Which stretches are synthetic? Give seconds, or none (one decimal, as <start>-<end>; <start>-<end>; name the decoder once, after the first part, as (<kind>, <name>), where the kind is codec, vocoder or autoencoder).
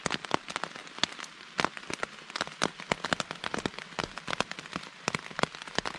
none